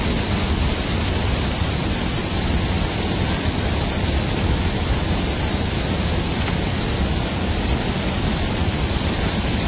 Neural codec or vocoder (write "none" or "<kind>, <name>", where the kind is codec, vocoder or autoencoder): vocoder, BigVGAN v2